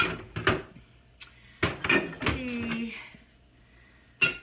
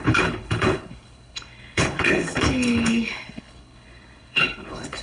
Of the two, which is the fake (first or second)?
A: second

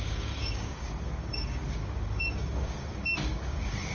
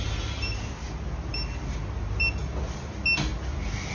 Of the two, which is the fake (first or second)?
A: first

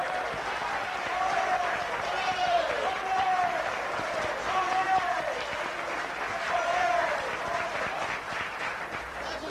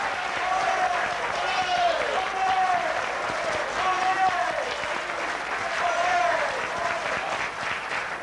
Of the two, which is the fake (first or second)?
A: first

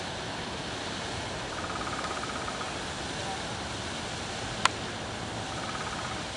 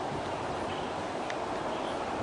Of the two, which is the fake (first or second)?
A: second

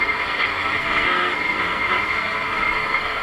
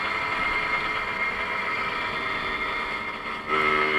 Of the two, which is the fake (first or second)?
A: first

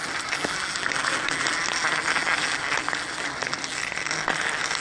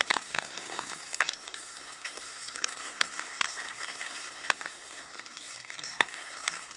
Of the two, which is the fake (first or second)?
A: second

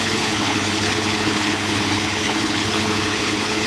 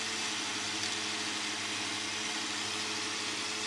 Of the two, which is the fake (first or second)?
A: first